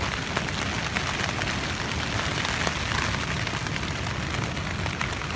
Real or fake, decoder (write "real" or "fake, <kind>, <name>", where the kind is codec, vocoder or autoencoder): real